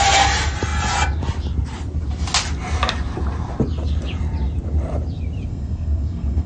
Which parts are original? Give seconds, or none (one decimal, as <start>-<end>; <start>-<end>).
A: 0.0-5.5